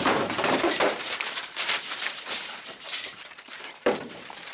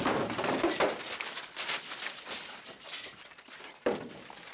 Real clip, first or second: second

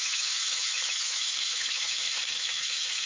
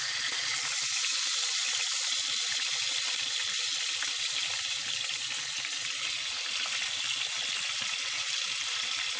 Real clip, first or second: second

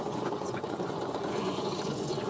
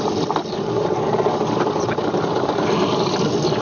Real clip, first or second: second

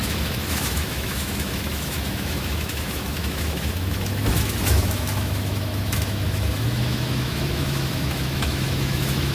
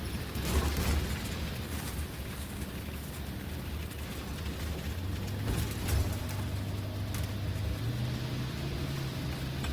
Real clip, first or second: second